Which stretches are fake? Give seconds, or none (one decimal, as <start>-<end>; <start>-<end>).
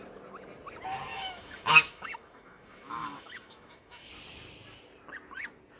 1.1-4.1